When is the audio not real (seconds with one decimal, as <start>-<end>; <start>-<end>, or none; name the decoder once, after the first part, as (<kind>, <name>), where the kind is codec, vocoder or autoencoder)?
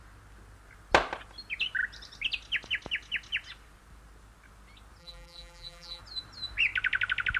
5.0-6.0 (vocoder, BigVGAN v2)